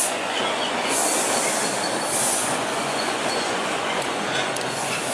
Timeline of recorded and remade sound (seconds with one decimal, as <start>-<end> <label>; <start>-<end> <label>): 0.0-1.0 remade; 1.0-2.2 recorded; 2.2-5.1 remade